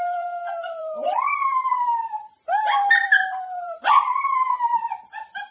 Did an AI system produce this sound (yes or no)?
yes